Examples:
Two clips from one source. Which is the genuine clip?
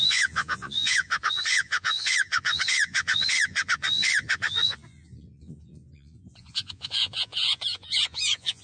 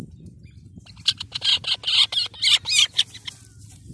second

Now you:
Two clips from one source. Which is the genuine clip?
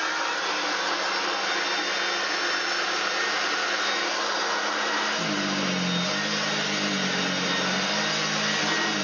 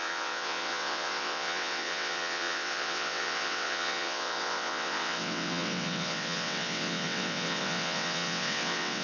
first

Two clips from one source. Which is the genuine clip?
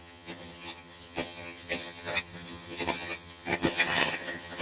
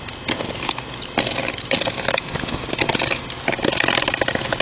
second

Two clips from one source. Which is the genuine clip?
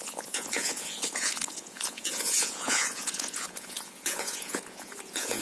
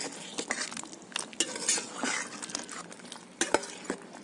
second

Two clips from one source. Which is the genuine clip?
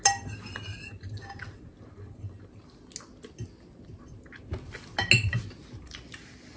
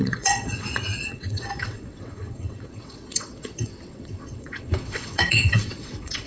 first